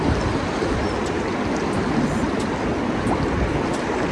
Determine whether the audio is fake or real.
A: real